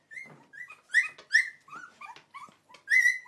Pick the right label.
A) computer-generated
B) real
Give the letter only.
B